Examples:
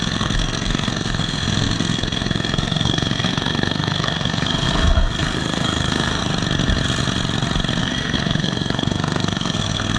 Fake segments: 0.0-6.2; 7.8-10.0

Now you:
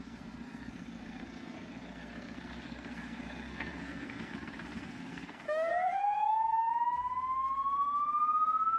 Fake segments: 0.0-6.7

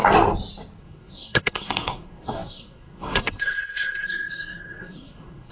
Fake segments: 0.8-5.5